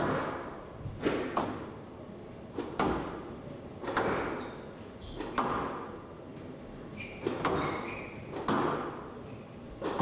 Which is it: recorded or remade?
recorded